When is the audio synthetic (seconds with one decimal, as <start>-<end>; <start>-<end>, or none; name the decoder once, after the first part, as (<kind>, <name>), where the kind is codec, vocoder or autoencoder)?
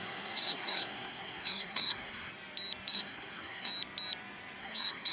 0.0-2.3 (codec, SNAC); 2.9-3.7; 4.6-5.1